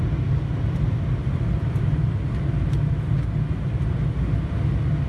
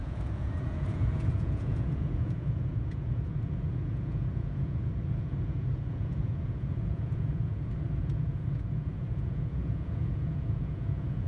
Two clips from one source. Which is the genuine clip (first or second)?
first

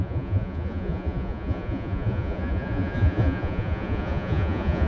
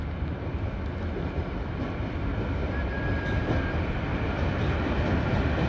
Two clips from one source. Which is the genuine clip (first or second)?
second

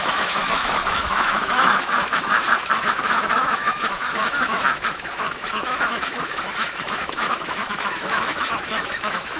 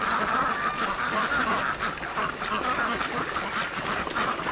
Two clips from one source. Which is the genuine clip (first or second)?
second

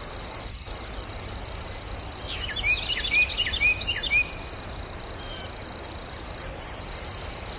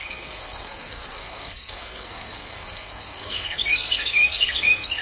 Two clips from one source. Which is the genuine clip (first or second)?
first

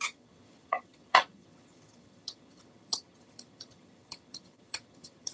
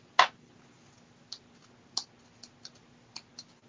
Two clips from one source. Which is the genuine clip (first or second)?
second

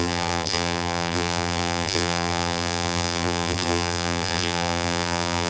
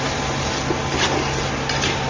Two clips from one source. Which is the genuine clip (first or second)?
second